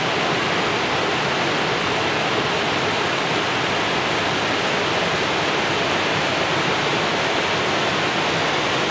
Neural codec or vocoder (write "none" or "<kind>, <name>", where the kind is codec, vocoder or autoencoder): none